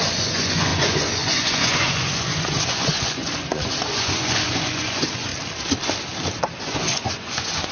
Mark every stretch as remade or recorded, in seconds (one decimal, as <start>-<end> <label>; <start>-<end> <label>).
0.0-5.3 remade; 5.3-6.6 recorded; 6.6-7.7 remade